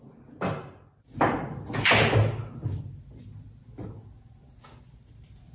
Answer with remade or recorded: recorded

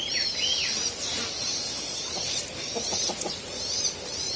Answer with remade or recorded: remade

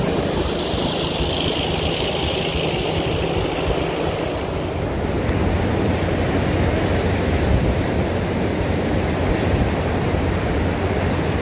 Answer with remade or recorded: recorded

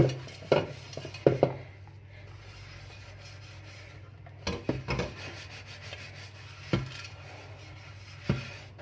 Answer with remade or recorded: recorded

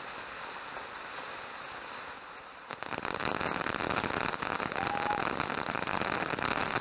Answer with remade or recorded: recorded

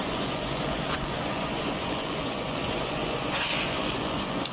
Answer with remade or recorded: remade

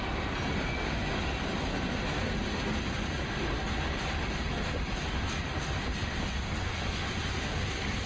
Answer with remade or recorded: recorded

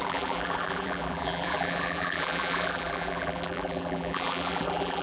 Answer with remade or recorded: remade